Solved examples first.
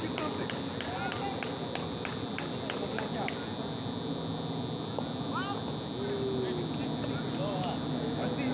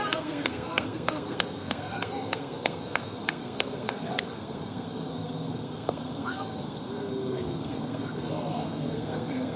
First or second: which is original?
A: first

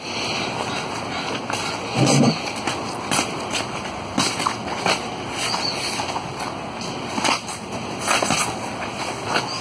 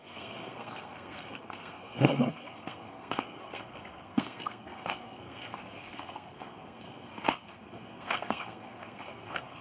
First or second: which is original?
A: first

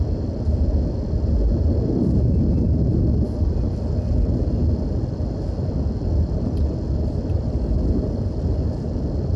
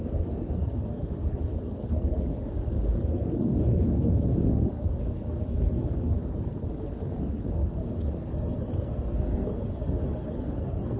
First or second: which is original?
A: first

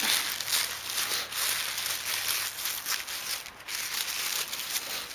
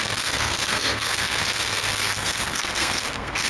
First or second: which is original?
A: first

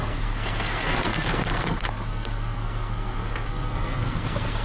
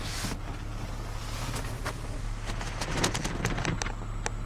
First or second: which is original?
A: second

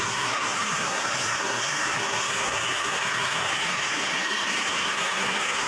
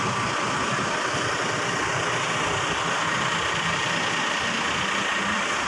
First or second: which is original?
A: second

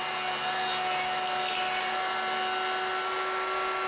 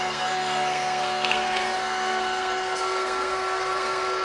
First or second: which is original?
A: first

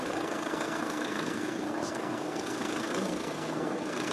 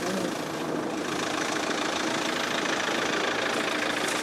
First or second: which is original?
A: second